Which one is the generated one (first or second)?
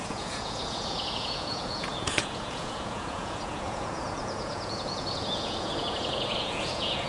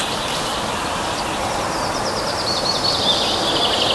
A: first